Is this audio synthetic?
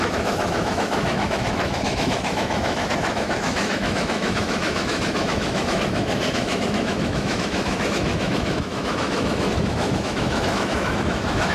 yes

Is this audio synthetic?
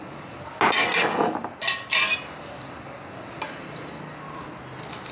no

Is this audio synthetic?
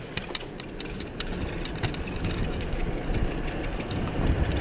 no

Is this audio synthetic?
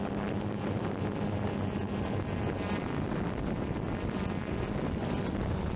no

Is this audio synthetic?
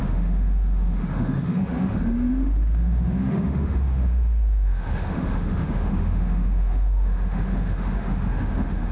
yes